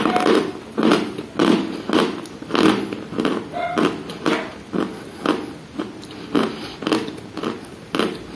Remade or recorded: recorded